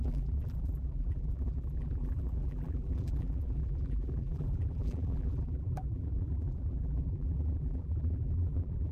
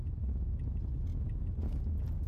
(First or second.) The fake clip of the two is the first